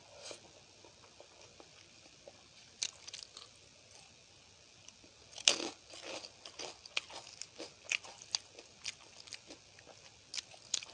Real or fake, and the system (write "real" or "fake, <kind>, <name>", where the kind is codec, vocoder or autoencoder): real